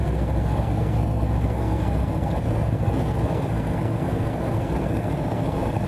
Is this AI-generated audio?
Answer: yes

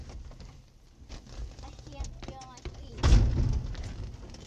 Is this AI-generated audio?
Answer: no